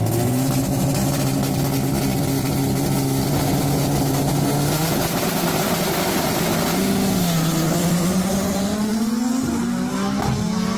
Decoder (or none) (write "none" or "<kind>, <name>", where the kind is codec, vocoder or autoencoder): none